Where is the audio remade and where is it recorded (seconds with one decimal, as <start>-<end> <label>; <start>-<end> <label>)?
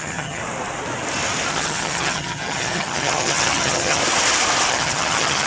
0.0-0.4 remade; 0.4-1.5 recorded; 1.5-4.0 remade; 4.0-4.7 recorded; 4.7-5.5 remade